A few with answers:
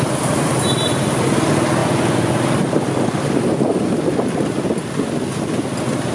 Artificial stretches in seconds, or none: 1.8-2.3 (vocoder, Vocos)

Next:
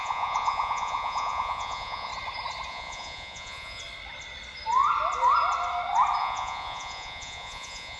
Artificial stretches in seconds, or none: 0.0-2.1 (vocoder, Vocos); 2.7-3.8; 6.2-8.0

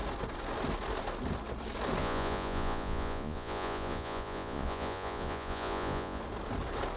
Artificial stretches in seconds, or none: 2.0-6.2 (vocoder, Vocos)

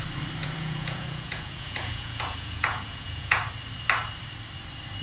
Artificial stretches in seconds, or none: 0.4-3.4 (vocoder, Vocos)

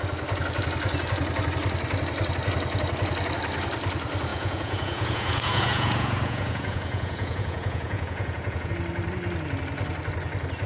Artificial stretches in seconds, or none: 4.3-8.7 (vocoder, Vocos)

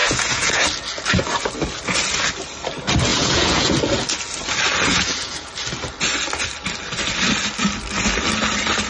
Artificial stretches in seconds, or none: 0.0-0.6 (vocoder, Vocos); 3.1-3.7; 4.9-5.5

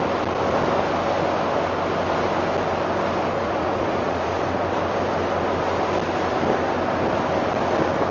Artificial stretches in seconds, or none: 3.4-4.4 (vocoder, Vocos)